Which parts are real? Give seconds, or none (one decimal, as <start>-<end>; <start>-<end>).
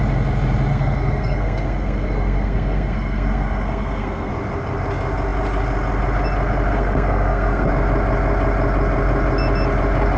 0.0-0.7; 4.3-6.7; 7.7-10.2